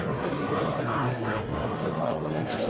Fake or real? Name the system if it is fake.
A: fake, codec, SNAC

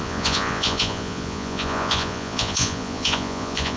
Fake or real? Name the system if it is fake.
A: fake, vocoder, Vocos